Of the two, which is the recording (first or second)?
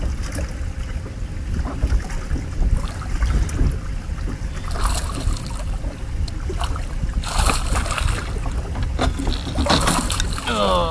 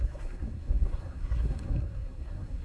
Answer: first